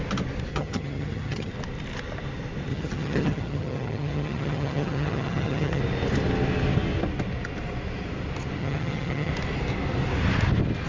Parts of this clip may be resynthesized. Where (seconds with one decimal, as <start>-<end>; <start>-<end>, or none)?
0.5-1.5; 2.7-5.8; 8.6-9.3